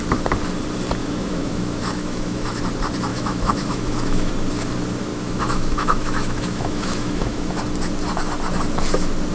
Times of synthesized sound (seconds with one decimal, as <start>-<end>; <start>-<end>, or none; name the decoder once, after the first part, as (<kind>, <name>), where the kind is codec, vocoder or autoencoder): 1.0-2.6 (autoencoder, DAC-VAE); 3.1-4.3; 5.1-7.6